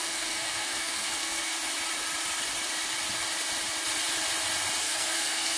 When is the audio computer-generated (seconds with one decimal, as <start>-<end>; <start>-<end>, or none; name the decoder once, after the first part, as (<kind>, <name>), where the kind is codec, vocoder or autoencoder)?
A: 0.0-1.5 (codec, SNAC); 4.8-5.6